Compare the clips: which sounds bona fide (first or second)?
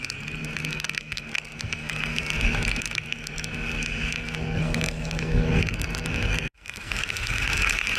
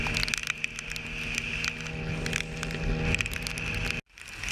second